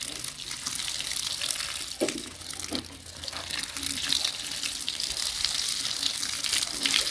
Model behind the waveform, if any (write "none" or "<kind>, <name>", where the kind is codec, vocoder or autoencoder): none